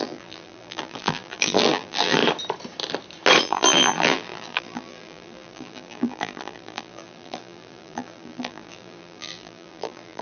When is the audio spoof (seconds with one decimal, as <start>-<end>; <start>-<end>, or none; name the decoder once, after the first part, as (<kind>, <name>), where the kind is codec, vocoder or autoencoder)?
0.0-2.2 (vocoder, BigVGAN v2); 3.4-10.2